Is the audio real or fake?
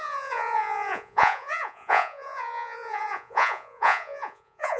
fake